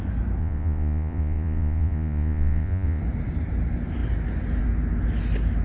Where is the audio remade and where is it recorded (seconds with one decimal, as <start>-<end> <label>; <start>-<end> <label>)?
0.0-0.4 recorded; 0.4-3.0 remade; 3.0-5.6 recorded